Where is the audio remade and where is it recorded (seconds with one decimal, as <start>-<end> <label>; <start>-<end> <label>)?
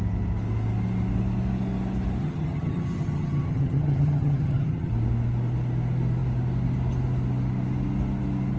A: 0.0-2.2 recorded; 2.2-4.9 remade; 4.9-8.6 recorded